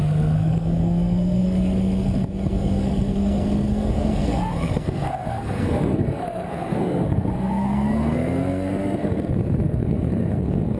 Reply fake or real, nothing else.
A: fake